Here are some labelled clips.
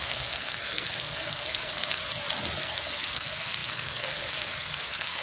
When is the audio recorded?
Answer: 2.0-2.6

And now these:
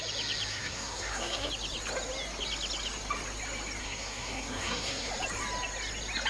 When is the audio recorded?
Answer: 0.0-0.5; 1.5-3.8; 5.1-6.3

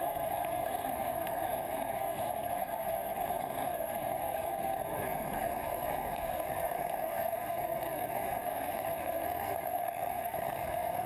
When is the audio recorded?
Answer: none

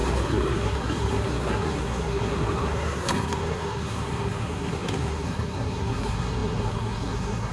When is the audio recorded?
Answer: none

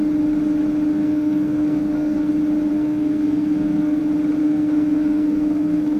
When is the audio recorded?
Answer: 0.0-0.9; 2.3-2.7; 4.0-4.4

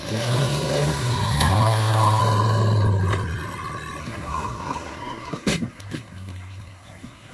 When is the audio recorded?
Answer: 2.2-4.0

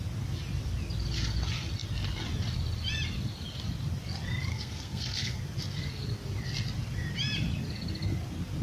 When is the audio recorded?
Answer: 0.0-4.5; 5.4-8.6